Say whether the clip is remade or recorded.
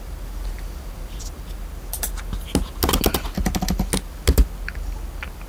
recorded